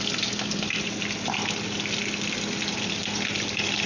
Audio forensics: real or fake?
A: real